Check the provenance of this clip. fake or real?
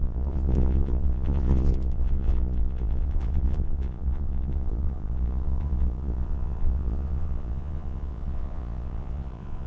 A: fake